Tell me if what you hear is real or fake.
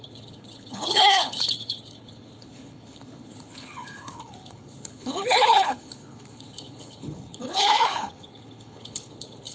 fake